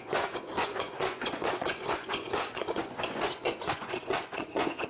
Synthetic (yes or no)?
yes